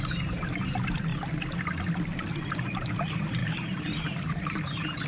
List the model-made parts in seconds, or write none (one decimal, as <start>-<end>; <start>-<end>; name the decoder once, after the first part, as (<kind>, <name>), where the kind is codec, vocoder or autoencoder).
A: 0.0-1.1 (vocoder, BigVGAN v2); 2.5-5.1